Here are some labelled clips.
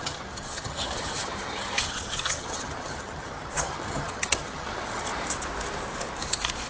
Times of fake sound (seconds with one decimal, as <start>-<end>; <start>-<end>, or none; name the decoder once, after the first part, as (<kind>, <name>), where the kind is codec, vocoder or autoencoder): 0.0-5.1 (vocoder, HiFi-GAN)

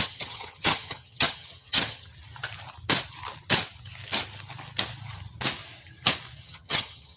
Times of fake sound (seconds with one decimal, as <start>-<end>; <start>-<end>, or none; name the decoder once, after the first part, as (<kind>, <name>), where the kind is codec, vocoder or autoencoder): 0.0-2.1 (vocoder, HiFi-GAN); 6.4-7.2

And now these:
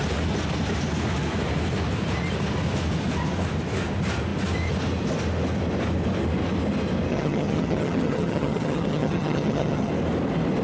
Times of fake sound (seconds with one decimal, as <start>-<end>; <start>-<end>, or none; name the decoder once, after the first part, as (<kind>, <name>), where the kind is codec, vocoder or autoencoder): 7.1-9.9 (vocoder, HiFi-GAN)